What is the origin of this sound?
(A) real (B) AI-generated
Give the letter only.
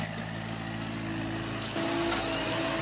A